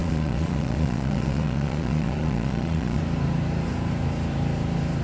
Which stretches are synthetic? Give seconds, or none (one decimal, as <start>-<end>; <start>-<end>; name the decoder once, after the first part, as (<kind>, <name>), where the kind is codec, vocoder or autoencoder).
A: 0.0-3.0 (vocoder, Vocos)